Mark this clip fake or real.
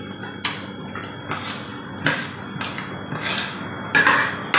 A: real